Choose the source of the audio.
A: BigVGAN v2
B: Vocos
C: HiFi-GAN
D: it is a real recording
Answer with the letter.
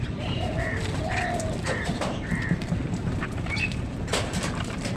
A